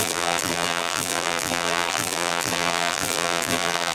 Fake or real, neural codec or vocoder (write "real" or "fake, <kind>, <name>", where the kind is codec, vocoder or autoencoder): fake, vocoder, BigVGAN v2